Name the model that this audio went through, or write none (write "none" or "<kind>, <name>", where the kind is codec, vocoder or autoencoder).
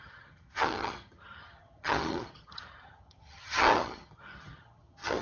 vocoder, HiFi-GAN